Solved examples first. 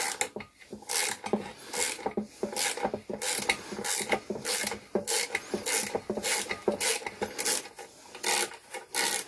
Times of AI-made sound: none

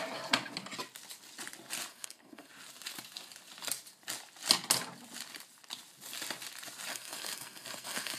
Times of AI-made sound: 1.9-2.5 (codec, SNAC); 6.9-8.2

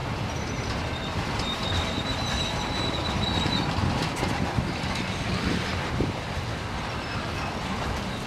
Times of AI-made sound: 0.0-5.7 (vocoder, BigVGAN v2); 7.2-8.3

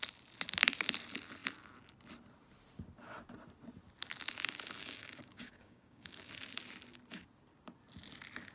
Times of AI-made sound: 4.8-6.3 (codec, DAC)

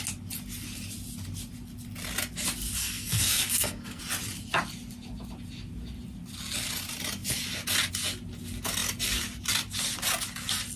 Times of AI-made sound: 2.8-4.0 (codec, SNAC)

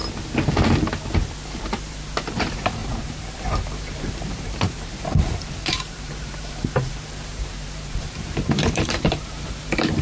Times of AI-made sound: 1.6-10.0 (vocoder, BigVGAN v2)